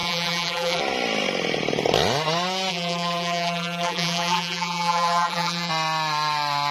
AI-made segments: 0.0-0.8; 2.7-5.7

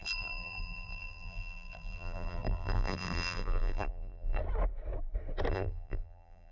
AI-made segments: 0.0-4.4; 5.5-6.5

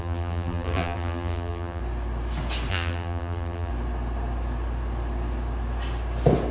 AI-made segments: 0.0-1.8; 2.7-3.7

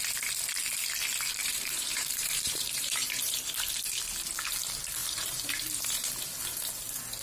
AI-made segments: 1.4-4.0; 5.0-6.1